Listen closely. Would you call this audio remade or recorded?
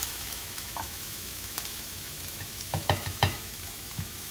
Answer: remade